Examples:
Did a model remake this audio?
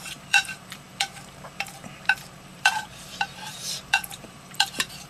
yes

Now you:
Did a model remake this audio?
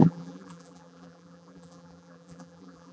yes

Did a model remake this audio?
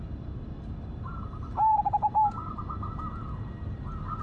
no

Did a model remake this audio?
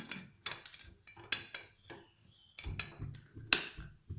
no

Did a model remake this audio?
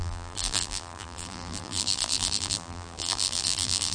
yes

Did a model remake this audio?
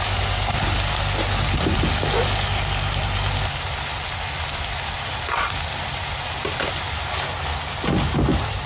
no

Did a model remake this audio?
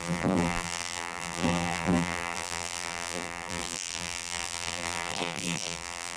yes